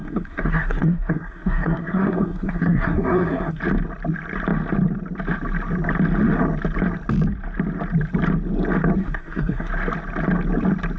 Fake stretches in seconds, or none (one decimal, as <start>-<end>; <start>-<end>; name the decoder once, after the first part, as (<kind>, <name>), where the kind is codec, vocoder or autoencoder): 0.0-3.6 (codec, SNAC); 9.0-9.7